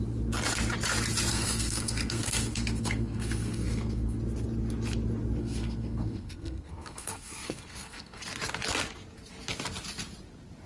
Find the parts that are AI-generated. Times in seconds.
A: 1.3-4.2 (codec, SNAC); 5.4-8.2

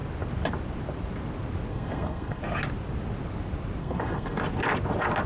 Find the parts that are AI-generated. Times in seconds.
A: 1.7-2.4 (codec, SNAC); 3.8-4.4

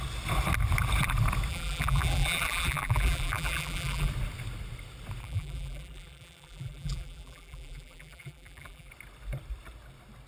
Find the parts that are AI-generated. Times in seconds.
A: 1.5-4.1 (vocoder, BigVGAN v2); 5.2-8.9

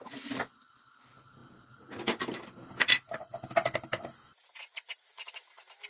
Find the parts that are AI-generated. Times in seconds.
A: none

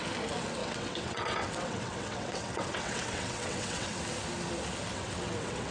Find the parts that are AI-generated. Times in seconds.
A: 0.6-4.0 (vocoder, WaveNeXt); 4.9-5.7

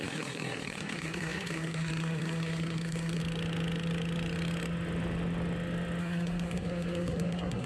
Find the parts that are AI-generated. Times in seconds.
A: 0.0-3.2 (codec, SNAC); 6.0-7.7